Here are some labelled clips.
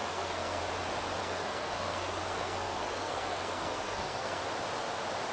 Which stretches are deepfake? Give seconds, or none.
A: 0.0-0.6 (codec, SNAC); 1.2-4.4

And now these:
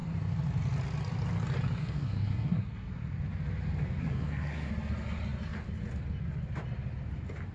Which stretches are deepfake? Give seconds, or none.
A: 1.8-3.1 (codec, SNAC); 4.0-4.7

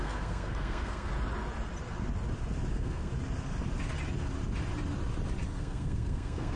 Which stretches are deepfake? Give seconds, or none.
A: 0.0-1.1 (codec, SNAC); 2.7-3.1; 5.6-6.6

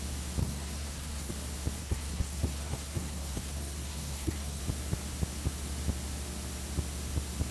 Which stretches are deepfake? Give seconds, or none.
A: 0.4-1.3 (codec, SNAC); 1.8-4.6

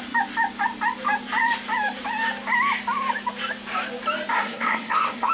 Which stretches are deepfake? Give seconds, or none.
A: 4.3-5.3 (codec, SNAC)

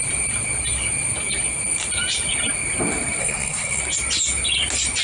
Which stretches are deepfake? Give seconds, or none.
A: 3.2-3.8 (codec, SNAC)